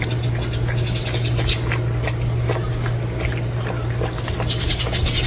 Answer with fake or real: real